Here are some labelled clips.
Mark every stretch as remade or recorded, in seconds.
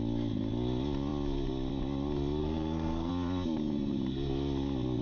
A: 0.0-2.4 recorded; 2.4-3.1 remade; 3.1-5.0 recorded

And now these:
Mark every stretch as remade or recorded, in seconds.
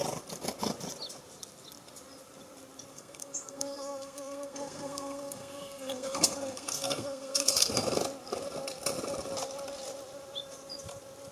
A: 0.0-2.9 recorded; 2.9-7.7 remade; 7.7-11.3 recorded